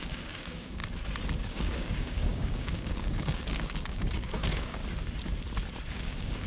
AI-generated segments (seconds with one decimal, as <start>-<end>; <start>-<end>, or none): 0.0-0.8; 1.5-4.8; 5.9-6.5